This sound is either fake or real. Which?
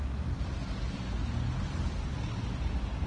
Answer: real